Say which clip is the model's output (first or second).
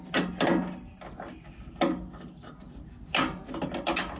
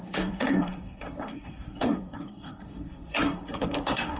second